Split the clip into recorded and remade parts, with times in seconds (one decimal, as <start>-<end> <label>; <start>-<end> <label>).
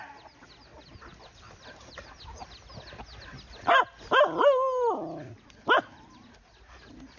0.0-7.2 recorded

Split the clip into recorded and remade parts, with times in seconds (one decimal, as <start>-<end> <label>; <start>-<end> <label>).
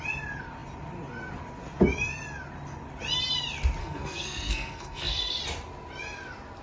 0.0-3.8 recorded; 3.8-5.4 remade; 5.4-6.6 recorded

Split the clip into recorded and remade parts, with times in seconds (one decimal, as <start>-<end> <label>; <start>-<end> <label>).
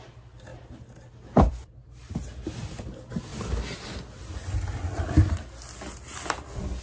0.0-6.8 recorded